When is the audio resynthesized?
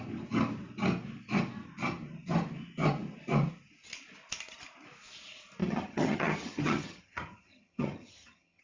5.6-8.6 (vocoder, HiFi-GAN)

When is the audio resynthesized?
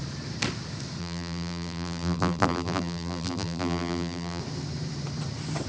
1.0-4.4 (vocoder, BigVGAN v2)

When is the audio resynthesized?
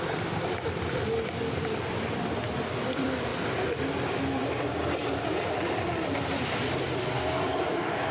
0.0-3.3 (vocoder, BigVGAN v2); 5.5-8.1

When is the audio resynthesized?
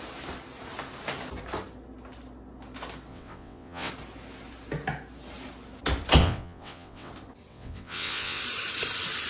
3.1-3.9 (vocoder, WaveNeXt); 6.2-7.1; 7.5-8.4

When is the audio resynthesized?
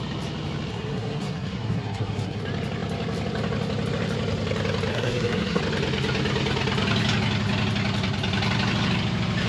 0.7-2.4 (codec, SNAC); 4.9-5.6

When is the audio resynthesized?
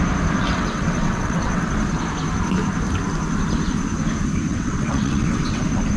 0.4-1.7 (vocoder, WaveNeXt); 4.5-5.6